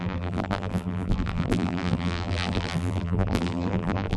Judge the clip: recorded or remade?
remade